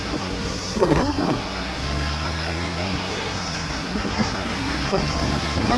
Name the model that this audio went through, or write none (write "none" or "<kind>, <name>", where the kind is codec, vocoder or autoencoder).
codec, SNAC